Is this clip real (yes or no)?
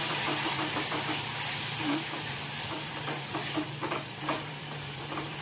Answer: no